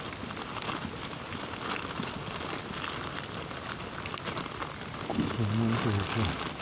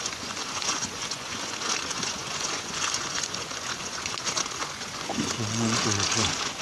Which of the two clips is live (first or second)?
first